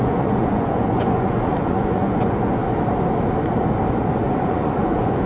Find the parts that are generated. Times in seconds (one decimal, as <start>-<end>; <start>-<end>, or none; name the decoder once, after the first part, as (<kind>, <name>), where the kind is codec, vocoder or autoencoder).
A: 0.0-2.6 (vocoder, Vocos); 4.1-5.2